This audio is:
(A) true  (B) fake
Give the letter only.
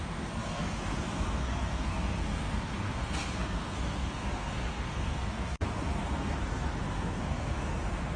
B